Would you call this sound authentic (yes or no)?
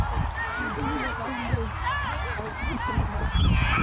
yes